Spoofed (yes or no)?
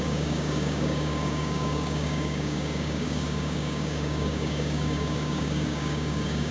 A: yes